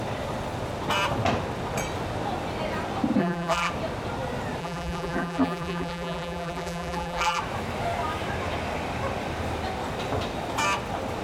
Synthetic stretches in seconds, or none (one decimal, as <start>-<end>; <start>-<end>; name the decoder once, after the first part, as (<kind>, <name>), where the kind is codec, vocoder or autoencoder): 3.2-3.7 (vocoder, BigVGAN v2); 4.6-7.4

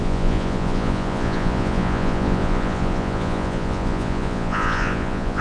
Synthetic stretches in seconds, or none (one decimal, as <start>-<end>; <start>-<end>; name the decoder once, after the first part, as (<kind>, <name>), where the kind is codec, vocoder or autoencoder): 0.0-5.4 (vocoder, Vocos)

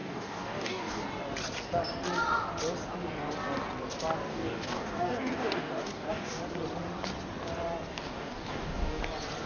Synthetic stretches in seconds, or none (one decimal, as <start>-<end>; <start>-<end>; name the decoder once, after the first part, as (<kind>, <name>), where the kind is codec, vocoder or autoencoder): 0.0-1.0 (codec, DAC); 4.3-6.4; 7.9-9.0